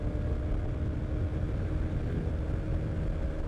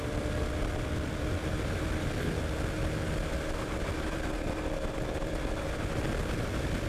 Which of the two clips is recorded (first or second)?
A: first